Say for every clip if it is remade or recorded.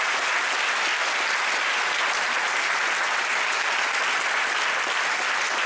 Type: recorded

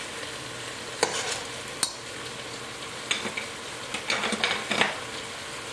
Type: recorded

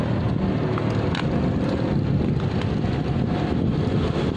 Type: recorded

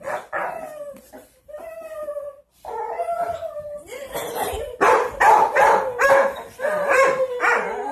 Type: remade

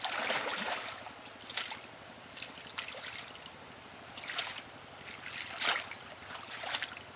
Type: recorded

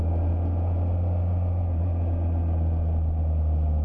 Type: recorded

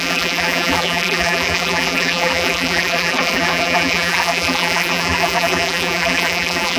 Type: remade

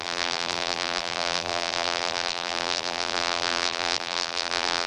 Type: remade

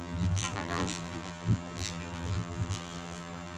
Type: remade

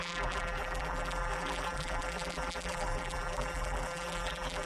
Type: remade